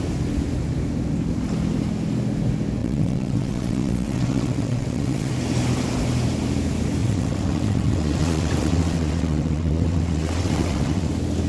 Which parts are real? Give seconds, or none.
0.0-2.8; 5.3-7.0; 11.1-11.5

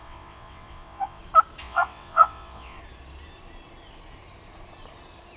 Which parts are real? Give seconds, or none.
1.2-1.6; 2.8-5.4

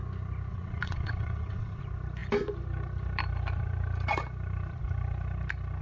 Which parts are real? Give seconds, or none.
0.0-0.5; 1.8-5.8

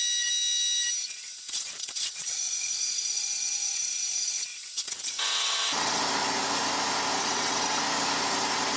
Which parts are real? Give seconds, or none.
0.0-1.0; 6.0-7.2; 7.8-8.8

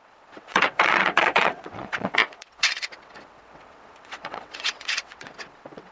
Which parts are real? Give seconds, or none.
none

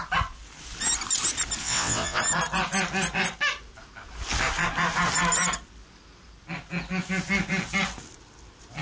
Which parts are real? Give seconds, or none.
0.0-1.6; 2.2-8.8

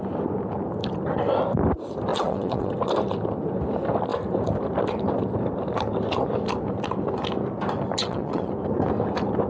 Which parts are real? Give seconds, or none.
0.0-2.1; 2.7-8.0; 8.5-9.5

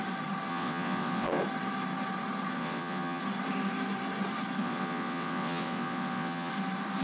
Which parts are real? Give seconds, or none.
0.0-0.5; 1.4-2.6; 3.2-4.6; 6.5-7.0